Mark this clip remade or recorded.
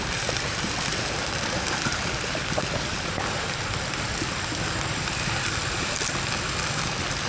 remade